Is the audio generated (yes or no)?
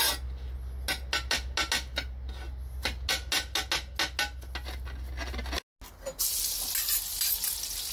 no